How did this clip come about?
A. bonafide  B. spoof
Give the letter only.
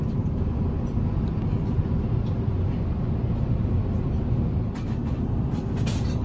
A